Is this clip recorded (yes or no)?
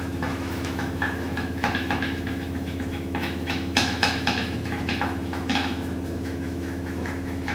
no